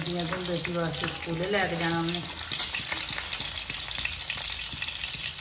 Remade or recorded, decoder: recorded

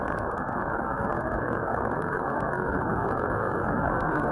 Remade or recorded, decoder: remade, codec, SNAC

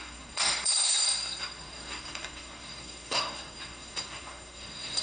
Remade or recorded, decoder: remade, codec, SNAC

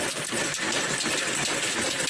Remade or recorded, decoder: recorded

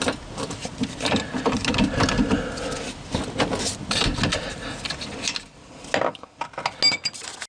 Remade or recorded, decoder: recorded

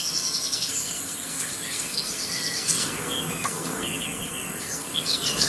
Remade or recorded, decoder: remade, codec, SNAC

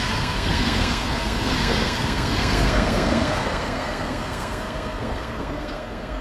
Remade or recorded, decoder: remade, codec, SNAC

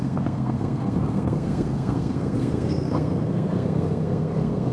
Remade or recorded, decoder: remade, codec, SNAC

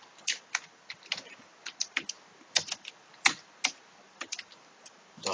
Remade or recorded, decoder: recorded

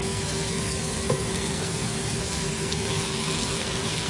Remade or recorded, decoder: remade, codec, SNAC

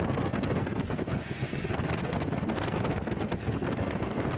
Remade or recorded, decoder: remade, codec, SNAC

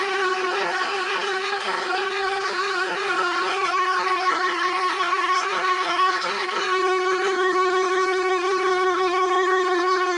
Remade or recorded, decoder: remade, codec, SNAC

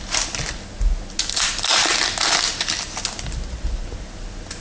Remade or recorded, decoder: recorded